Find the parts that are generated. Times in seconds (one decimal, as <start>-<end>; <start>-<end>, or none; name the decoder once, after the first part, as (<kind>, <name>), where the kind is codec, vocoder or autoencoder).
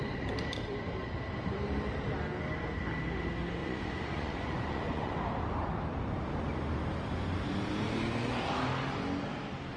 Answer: 3.6-5.1 (vocoder, Vocos)